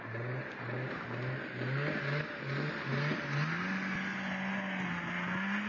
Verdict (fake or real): real